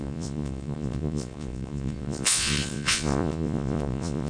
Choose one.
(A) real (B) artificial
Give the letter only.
B